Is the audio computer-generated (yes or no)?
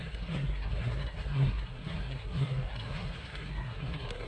yes